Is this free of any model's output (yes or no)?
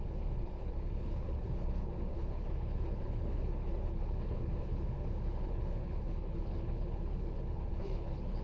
no